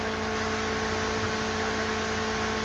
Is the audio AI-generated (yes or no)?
no